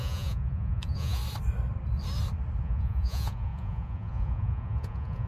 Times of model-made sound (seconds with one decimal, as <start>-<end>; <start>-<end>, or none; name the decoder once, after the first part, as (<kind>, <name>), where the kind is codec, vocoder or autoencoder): 0.0-1.2 (vocoder, Vocos); 2.6-5.3